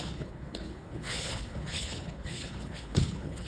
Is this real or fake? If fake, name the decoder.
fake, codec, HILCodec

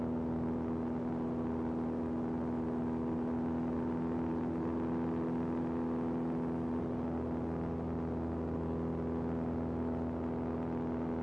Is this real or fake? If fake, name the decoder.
real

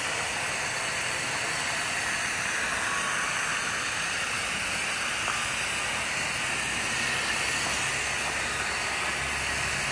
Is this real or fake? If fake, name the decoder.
real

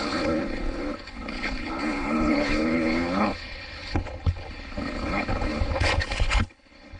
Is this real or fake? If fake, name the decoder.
fake, codec, HILCodec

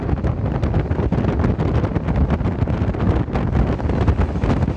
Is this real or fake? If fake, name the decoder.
real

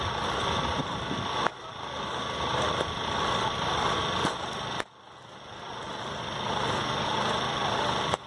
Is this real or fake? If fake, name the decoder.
real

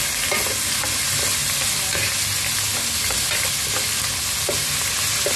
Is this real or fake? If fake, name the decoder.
real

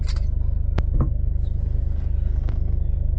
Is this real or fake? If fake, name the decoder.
real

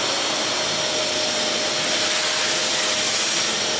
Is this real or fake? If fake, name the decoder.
real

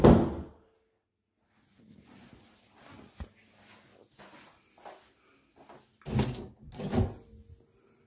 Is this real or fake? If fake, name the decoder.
real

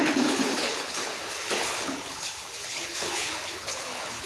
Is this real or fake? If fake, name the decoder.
fake, codec, HILCodec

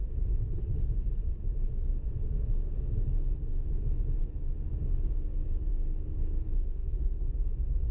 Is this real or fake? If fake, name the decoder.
real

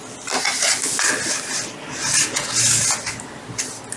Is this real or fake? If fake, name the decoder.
real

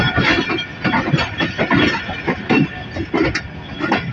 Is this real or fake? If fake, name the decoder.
real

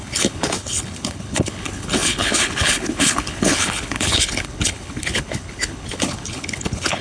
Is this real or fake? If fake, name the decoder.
fake, codec, HILCodec